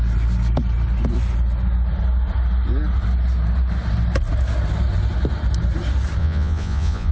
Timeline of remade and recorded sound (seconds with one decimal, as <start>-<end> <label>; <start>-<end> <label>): 0.0-6.2 recorded; 6.2-7.1 remade